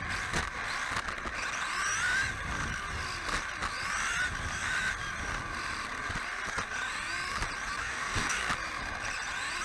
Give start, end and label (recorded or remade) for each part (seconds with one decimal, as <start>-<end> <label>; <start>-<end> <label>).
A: 0.0-7.8 recorded; 7.8-8.4 remade; 8.4-9.6 recorded